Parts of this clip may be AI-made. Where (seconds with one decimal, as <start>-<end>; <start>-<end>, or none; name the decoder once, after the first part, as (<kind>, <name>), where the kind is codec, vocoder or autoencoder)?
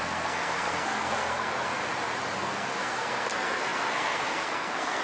0.0-1.8 (codec, SNAC); 2.4-5.0